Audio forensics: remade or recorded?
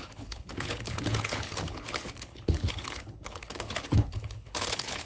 remade